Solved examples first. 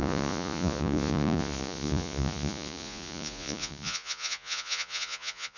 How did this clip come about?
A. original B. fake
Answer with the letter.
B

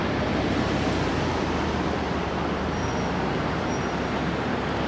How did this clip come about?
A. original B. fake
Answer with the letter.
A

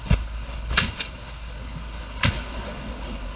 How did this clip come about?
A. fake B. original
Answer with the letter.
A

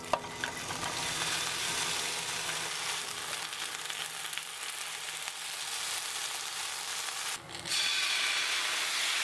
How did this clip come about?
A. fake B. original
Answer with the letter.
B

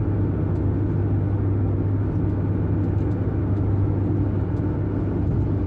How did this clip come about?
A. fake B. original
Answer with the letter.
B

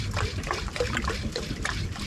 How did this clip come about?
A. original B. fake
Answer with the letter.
A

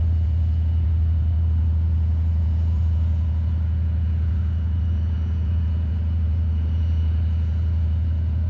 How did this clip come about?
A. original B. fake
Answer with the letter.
B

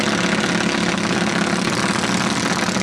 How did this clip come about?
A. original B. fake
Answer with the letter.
A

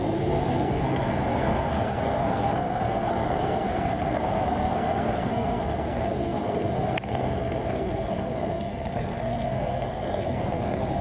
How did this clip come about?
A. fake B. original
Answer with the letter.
A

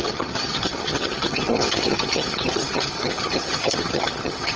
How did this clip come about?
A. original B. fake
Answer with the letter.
B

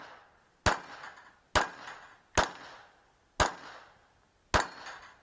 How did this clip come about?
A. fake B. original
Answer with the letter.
B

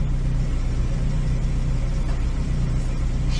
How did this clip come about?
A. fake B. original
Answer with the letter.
B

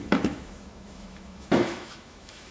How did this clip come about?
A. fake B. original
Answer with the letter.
A